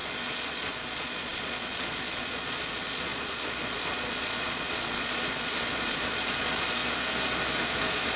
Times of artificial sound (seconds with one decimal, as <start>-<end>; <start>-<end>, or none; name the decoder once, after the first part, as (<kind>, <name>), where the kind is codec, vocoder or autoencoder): 0.0-6.8 (vocoder, Vocos); 7.7-8.2